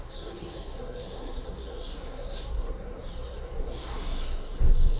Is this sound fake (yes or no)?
yes